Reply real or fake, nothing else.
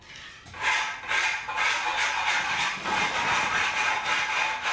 real